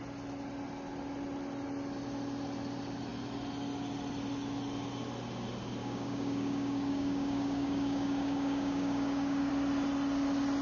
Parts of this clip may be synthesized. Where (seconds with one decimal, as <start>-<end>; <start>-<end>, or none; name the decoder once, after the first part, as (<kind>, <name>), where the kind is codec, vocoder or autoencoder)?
5.8-9.5 (codec, DAC)